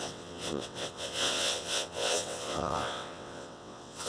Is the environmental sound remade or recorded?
remade